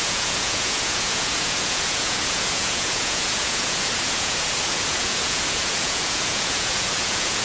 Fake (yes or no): yes